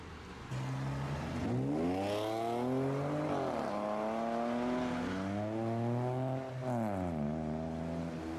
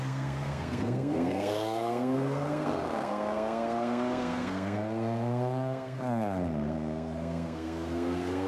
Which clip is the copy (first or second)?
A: second